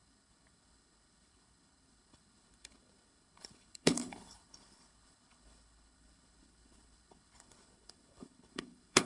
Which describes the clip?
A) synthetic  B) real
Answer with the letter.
A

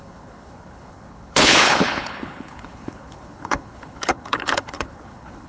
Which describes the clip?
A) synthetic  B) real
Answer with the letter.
A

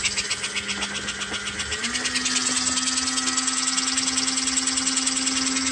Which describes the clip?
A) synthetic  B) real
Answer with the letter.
B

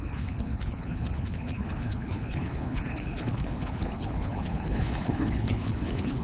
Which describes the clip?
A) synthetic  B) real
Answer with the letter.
A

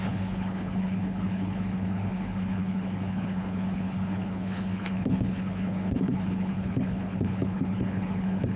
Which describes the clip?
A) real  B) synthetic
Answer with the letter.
B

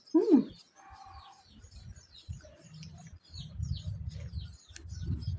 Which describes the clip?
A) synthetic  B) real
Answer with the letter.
B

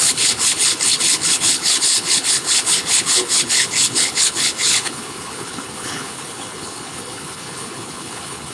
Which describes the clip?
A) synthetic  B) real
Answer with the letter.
A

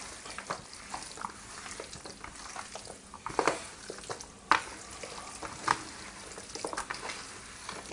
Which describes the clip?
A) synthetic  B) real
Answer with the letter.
B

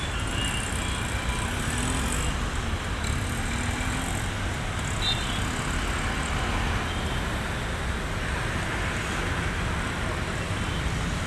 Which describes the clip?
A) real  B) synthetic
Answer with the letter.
A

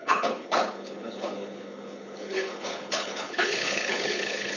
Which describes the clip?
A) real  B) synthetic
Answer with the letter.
B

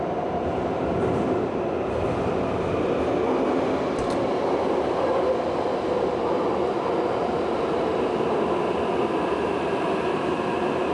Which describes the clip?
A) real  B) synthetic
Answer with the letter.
A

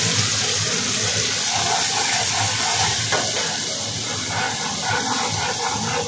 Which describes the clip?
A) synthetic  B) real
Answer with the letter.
B